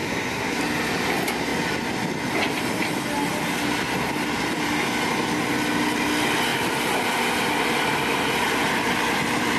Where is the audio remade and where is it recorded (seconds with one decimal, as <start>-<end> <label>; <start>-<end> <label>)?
0.0-0.6 remade; 0.6-9.6 recorded